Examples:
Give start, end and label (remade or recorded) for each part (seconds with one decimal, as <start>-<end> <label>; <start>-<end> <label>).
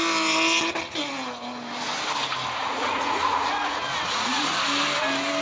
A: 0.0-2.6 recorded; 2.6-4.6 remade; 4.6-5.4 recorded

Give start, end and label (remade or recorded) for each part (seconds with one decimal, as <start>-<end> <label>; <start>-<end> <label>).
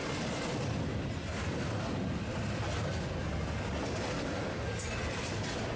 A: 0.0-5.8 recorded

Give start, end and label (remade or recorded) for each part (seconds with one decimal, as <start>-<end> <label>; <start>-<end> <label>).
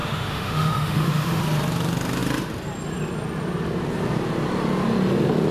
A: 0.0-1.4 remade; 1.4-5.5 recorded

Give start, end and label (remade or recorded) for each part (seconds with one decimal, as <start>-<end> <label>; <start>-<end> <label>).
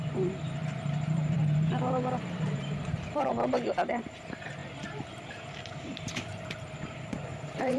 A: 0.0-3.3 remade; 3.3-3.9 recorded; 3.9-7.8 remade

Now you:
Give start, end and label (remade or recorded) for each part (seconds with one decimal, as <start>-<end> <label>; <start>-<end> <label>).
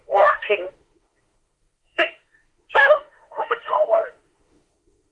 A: 0.0-5.1 remade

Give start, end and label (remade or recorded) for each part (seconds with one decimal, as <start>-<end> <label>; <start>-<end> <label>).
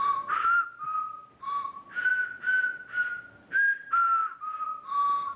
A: 0.0-5.4 recorded